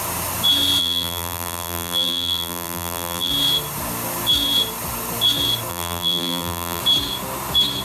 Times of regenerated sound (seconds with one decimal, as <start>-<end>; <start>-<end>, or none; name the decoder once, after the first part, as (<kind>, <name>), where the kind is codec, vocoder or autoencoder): 0.8-3.3 (vocoder, BigVGAN v2); 5.7-6.8